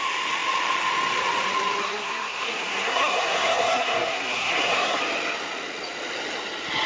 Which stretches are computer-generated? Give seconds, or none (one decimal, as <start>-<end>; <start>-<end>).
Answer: 1.8-5.0